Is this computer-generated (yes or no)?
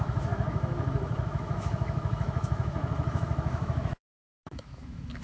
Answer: yes